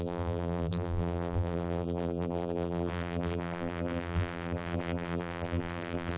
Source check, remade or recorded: remade